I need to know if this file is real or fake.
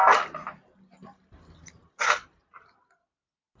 real